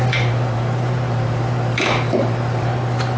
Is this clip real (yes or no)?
no